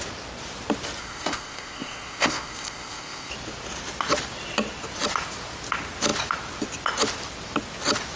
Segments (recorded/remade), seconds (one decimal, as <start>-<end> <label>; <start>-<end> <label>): 0.0-1.0 recorded; 1.0-3.3 remade; 3.3-8.2 recorded